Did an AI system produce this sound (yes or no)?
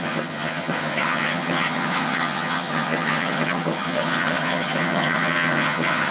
yes